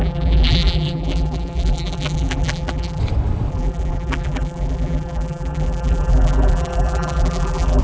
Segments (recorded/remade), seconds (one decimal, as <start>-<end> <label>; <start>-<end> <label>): 0.0-3.0 remade; 3.0-3.5 recorded; 3.5-7.8 remade

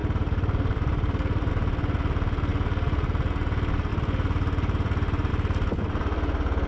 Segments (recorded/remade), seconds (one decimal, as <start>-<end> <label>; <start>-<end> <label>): 0.0-1.5 remade; 1.5-3.9 recorded; 3.9-5.3 remade; 5.3-6.7 recorded

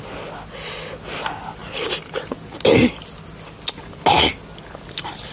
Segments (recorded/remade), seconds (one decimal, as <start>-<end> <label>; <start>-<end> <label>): 0.0-1.6 recorded; 1.6-2.3 remade; 2.3-5.3 recorded